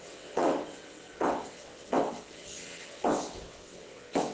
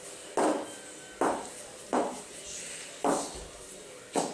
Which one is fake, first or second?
first